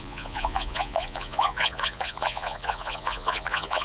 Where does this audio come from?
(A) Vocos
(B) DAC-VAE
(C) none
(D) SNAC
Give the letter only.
A